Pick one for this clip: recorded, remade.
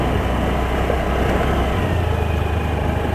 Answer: recorded